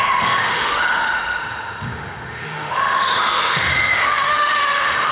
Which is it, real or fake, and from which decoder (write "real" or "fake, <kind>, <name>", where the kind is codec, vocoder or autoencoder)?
fake, autoencoder, DAC-VAE